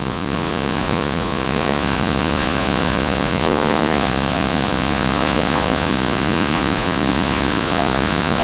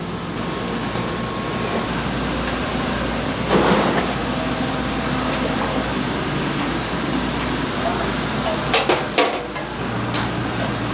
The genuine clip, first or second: second